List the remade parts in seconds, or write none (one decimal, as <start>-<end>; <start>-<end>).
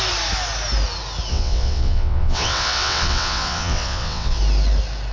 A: 1.3-4.4